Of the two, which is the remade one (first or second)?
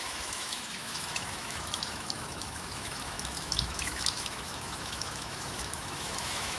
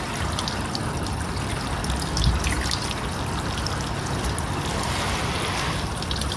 first